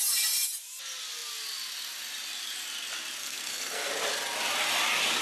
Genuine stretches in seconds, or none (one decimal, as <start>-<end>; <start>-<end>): 0.0-3.2; 3.9-5.2